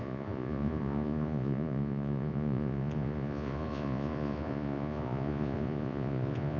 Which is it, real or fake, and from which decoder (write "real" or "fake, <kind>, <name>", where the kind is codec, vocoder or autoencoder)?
fake, vocoder, Vocos